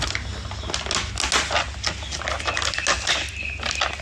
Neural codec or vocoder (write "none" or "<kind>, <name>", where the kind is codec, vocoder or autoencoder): none